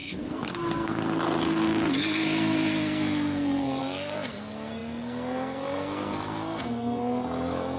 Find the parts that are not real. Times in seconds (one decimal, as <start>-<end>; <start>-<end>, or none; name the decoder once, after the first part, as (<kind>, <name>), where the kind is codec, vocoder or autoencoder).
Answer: 0.0-7.8 (codec, SNAC)